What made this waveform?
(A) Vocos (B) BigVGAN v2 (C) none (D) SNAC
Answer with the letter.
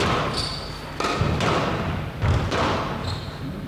C